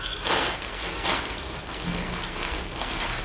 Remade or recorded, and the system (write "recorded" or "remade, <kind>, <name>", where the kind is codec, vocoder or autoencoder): remade, codec, SNAC